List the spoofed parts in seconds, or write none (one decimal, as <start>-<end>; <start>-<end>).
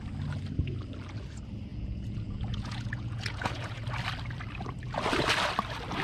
1.7-3.8